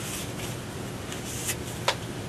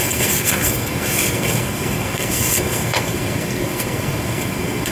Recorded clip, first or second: first